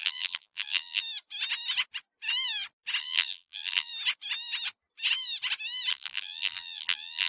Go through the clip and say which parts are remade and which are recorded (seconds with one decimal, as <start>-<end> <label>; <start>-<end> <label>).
0.0-1.0 remade; 1.0-3.0 recorded; 3.0-3.9 remade; 3.9-5.9 recorded; 5.9-7.3 remade